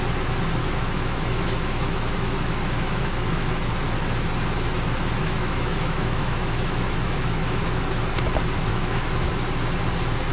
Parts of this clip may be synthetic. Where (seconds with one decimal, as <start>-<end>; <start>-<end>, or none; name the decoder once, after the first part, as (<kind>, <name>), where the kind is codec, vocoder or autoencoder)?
0.6-3.7 (autoencoder, DAC-VAE); 5.2-7.8; 8.7-9.3